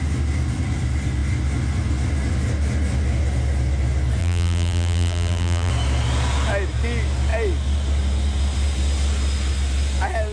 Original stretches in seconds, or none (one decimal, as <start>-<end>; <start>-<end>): 0.0-4.2; 5.7-10.3